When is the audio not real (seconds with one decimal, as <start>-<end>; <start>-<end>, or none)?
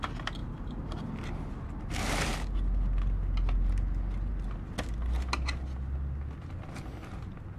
none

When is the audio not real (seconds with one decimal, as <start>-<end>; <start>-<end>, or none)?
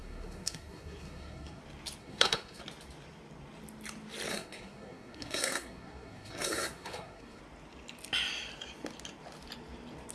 0.0-1.6; 2.0-2.6; 4.3-7.4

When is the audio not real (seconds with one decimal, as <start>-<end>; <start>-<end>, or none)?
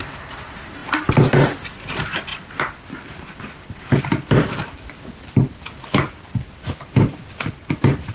0.0-2.3; 4.0-5.8; 7.2-8.1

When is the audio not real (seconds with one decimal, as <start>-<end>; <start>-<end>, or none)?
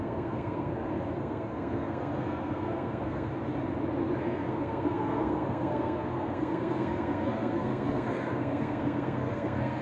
0.0-0.7; 1.2-3.3; 4.2-9.8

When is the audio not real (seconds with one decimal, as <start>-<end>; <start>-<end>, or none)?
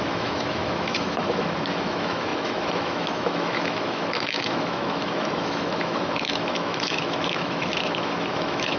0.0-8.8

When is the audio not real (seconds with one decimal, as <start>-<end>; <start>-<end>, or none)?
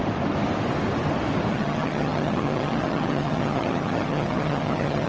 1.5-5.1